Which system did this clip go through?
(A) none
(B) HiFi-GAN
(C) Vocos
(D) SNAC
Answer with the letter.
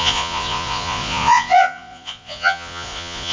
C